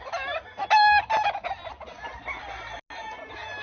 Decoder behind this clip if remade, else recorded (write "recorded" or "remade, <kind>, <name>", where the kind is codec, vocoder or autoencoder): recorded